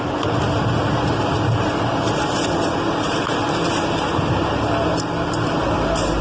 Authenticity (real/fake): real